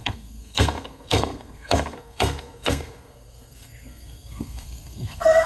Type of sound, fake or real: fake